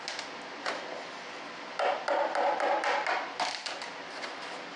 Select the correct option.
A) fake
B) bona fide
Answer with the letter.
B